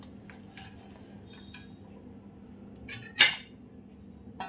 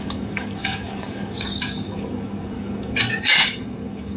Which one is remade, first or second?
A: second